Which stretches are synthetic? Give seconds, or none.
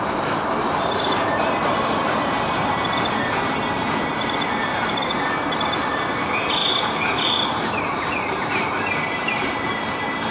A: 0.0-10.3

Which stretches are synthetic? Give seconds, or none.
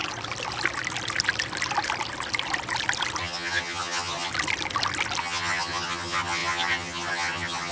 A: 3.2-4.3; 5.2-7.7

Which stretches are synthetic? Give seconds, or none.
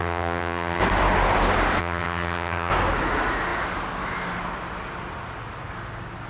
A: 0.0-0.8; 1.8-2.7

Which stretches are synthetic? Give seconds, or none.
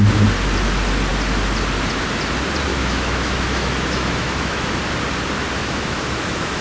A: 2.7-4.8; 5.6-6.6